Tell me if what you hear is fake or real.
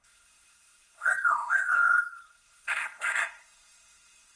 fake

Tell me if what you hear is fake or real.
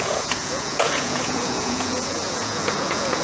fake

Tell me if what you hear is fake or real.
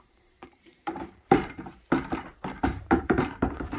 fake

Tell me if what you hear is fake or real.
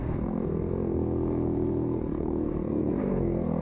fake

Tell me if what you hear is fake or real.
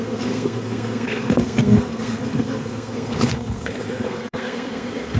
fake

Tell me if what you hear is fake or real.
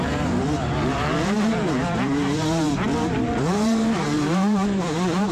fake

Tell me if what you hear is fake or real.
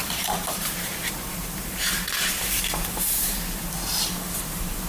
fake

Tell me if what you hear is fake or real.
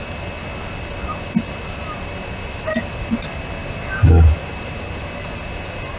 real